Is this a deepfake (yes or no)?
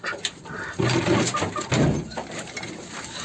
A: yes